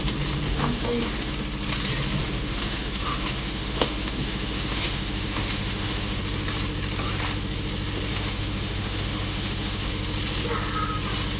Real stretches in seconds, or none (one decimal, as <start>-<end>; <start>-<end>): 0.0-0.5; 1.3-2.2; 6.2-8.1; 9.9-11.4